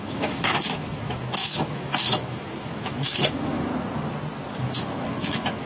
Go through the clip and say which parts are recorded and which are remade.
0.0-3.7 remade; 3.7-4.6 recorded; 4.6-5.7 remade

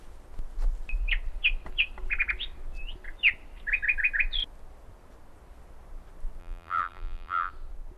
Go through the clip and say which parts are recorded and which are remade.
0.0-6.4 recorded; 6.4-7.5 remade; 7.5-8.0 recorded

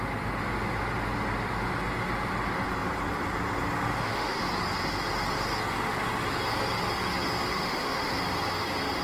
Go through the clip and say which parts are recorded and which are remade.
0.0-3.9 recorded; 3.9-4.4 remade; 4.4-7.5 recorded; 7.5-8.1 remade; 8.1-9.0 recorded

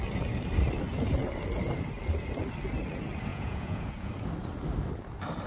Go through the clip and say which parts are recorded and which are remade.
0.0-3.3 recorded; 3.3-4.1 remade; 4.1-5.5 recorded

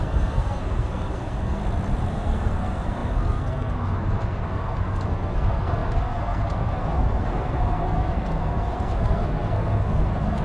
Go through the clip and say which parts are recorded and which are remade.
0.0-1.6 remade; 1.6-2.1 recorded; 2.1-10.4 remade